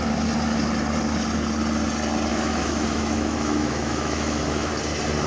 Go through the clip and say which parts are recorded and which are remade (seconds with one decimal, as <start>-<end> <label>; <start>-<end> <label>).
0.0-2.3 recorded; 2.3-4.7 remade; 4.7-5.3 recorded